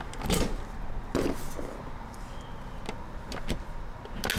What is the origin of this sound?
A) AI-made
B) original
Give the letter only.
B